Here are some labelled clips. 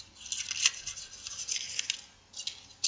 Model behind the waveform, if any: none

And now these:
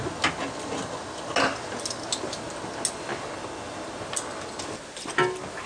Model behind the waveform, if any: none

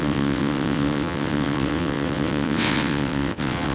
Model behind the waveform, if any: vocoder, WaveNeXt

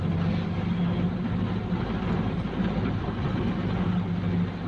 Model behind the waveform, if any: none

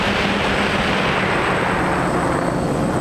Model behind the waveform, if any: none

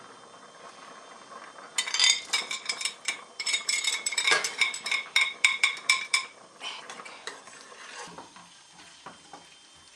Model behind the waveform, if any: vocoder, BigVGAN v2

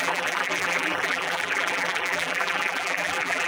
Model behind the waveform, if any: vocoder, BigVGAN v2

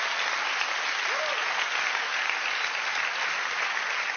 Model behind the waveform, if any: none